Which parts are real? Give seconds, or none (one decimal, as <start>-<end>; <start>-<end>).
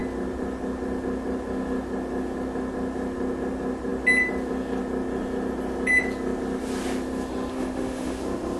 0.0-7.5; 8.2-8.6